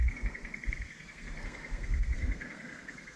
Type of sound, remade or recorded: remade